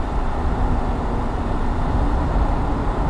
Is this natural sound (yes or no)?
yes